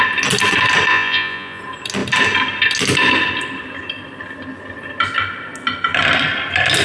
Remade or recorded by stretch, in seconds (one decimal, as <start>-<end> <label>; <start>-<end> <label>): 0.0-0.9 recorded; 0.9-1.6 remade; 1.6-6.8 recorded